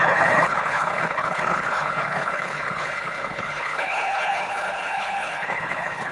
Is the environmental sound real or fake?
fake